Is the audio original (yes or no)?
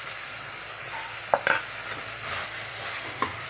yes